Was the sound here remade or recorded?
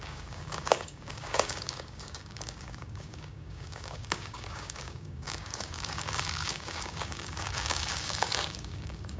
remade